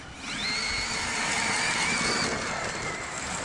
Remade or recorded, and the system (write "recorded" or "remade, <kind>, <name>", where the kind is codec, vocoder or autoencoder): recorded